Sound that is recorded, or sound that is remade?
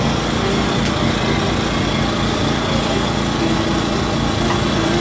recorded